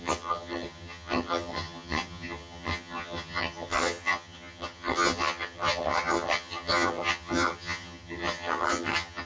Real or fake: fake